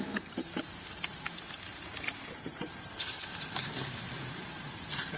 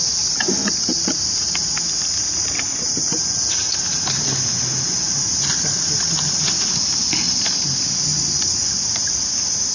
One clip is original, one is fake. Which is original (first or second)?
second